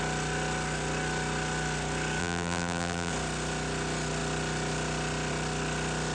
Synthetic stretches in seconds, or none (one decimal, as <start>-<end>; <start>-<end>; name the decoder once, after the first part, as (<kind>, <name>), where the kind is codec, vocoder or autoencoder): 2.2-3.1 (vocoder, BigVGAN v2)